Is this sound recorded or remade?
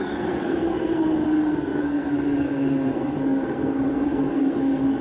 remade